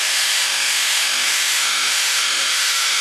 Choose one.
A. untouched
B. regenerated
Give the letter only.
B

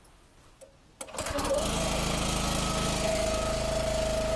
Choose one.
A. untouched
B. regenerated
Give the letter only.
A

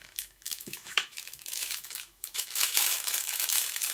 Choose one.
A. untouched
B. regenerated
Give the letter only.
B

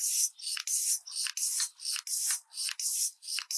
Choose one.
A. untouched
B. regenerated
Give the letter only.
A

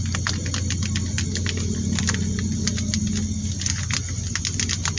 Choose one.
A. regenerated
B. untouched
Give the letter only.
B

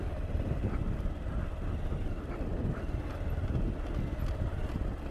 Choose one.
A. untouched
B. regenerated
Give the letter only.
A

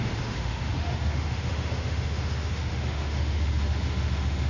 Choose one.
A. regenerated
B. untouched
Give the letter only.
A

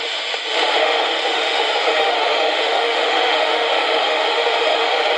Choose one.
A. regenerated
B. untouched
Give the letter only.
A